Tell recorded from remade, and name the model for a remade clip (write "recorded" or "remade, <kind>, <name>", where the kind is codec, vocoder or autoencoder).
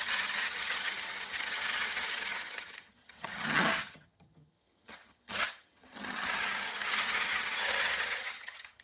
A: remade, vocoder, HiFi-GAN